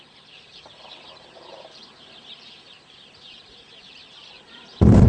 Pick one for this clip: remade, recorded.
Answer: remade